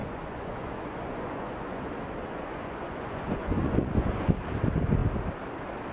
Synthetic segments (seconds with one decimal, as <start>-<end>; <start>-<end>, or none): 0.0-1.8; 2.2-4.3